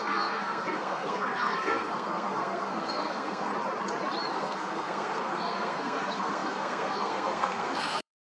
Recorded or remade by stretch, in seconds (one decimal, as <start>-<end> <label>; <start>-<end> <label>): 0.0-3.5 remade; 3.5-4.3 recorded; 4.3-8.2 remade